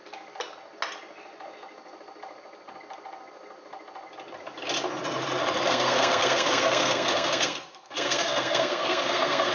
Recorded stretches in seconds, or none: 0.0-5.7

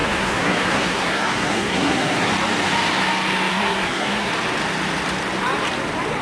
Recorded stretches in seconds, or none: 2.3-3.5; 4.3-6.2

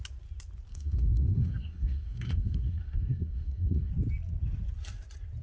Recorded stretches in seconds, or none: 0.0-0.7; 3.9-5.4